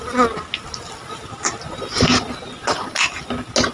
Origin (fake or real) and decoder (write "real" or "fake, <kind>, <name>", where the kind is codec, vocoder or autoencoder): real